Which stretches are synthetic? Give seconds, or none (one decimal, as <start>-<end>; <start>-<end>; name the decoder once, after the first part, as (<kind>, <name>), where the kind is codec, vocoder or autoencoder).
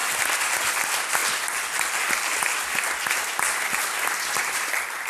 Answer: 0.7-1.2 (vocoder, BigVGAN v2); 4.3-5.1